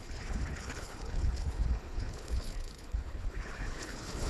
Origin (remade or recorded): remade